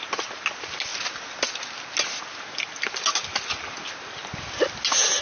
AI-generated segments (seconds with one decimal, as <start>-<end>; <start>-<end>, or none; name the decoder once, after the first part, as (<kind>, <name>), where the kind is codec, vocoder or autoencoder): none